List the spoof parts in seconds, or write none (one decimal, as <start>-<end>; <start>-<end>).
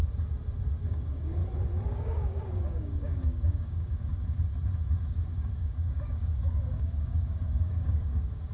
0.8-1.4; 1.9-4.1; 5.0-8.5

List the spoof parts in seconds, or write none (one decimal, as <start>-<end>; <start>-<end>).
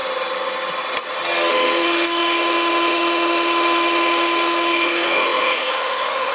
1.5-6.3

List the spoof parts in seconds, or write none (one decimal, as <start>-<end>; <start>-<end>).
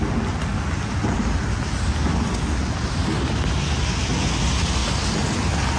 none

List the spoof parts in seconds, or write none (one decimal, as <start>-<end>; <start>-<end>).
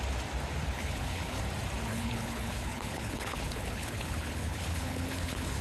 0.7-1.4; 1.9-5.6